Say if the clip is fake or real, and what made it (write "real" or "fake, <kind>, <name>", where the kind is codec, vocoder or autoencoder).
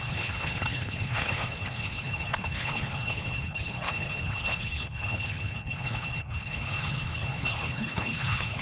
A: fake, codec, HILCodec